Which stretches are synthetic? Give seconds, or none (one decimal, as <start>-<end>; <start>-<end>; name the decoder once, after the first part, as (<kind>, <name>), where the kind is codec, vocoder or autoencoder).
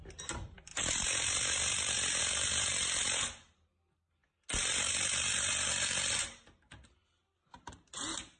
none